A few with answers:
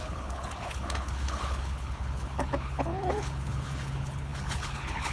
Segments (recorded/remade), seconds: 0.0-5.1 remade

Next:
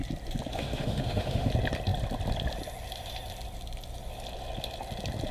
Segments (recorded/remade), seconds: 0.0-0.5 recorded; 0.5-1.5 remade; 1.5-5.3 recorded

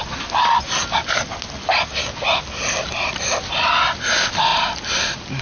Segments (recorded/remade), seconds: 0.0-5.4 recorded

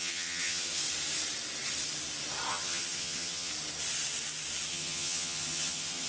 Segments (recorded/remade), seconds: 0.0-0.8 remade; 0.8-2.5 recorded; 2.5-3.5 remade; 3.5-4.7 recorded; 4.7-6.1 remade

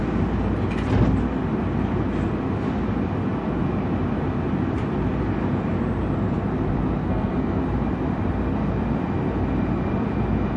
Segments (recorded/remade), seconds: 0.0-7.0 recorded; 7.0-7.6 remade; 7.6-10.6 recorded

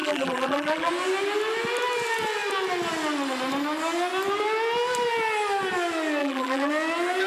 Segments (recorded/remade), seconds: 0.0-0.9 remade; 0.9-6.2 recorded; 6.2-6.7 remade; 6.7-7.3 recorded

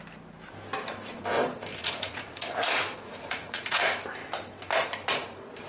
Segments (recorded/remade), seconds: 0.0-1.8 recorded; 1.8-3.8 remade; 3.8-5.7 recorded

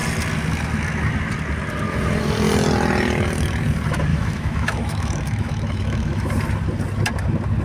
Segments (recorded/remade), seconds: 0.0-4.1 recorded; 4.1-6.3 remade; 6.3-7.6 recorded